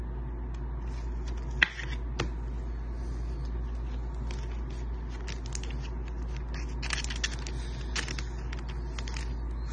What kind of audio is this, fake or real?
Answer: real